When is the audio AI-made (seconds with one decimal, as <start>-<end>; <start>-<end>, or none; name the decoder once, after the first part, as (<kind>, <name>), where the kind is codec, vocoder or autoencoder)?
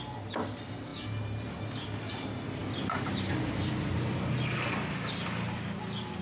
none